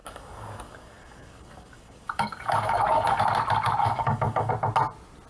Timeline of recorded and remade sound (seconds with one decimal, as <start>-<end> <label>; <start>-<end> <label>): 0.0-3.2 remade; 3.2-3.8 recorded; 3.8-4.5 remade; 4.5-5.3 recorded